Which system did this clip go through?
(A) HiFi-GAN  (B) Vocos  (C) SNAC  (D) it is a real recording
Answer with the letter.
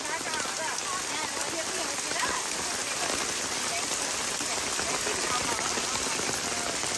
D